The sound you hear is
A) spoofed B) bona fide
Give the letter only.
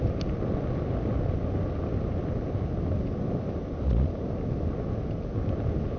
B